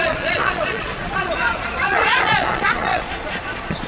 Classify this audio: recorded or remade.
remade